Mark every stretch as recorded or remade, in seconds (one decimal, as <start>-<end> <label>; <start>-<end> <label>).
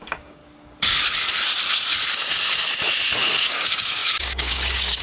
0.0-0.4 remade; 0.4-3.4 recorded; 3.4-5.0 remade